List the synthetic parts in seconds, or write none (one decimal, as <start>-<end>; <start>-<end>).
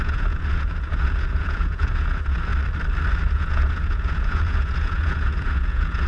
0.0-2.5; 3.2-6.1